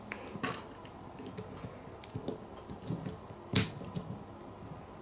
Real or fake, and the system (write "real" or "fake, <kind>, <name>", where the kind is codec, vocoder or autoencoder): real